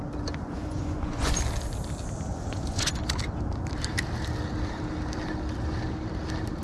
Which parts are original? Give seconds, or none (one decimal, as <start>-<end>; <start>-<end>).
0.0-0.4; 1.3-2.3; 2.9-6.6